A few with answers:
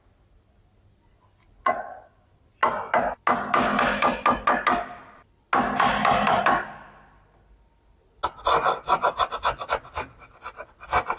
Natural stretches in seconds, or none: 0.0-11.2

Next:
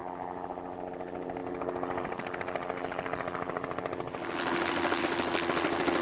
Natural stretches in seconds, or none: 0.9-1.4; 5.0-6.0

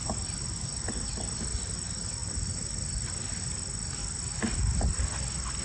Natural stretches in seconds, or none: 0.0-5.6